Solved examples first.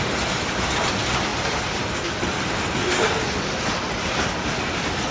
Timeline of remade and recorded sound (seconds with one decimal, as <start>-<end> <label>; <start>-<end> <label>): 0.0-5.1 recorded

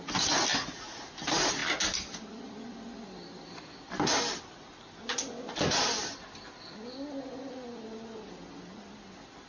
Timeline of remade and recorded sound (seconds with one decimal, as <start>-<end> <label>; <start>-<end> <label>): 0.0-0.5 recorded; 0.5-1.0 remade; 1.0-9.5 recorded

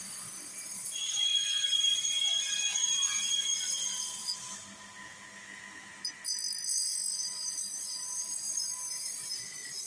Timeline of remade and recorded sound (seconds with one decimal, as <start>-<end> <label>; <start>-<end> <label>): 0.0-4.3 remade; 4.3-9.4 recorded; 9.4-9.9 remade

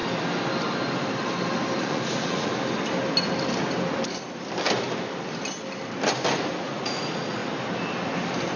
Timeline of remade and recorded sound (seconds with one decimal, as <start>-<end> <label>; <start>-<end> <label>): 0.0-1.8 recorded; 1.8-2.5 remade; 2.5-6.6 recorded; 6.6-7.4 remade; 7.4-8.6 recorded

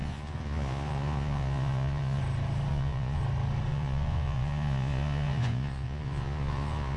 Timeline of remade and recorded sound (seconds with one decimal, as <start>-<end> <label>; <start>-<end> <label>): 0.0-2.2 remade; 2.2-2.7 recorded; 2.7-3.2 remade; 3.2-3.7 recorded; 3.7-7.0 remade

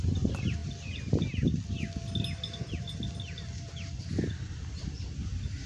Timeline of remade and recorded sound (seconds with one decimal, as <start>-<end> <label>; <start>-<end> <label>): 0.0-5.7 recorded

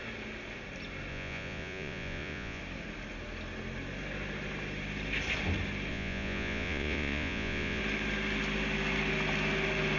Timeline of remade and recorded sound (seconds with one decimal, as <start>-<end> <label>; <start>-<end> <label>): 0.0-1.1 recorded; 1.1-2.6 remade; 2.6-5.9 recorded; 5.9-7.8 remade; 7.8-10.0 recorded

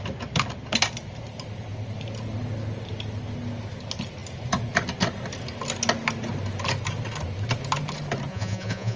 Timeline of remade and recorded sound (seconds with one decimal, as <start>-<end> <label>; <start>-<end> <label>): 0.0-8.3 recorded; 8.3-9.0 remade